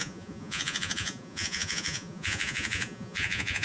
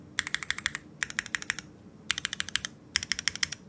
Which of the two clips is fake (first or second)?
first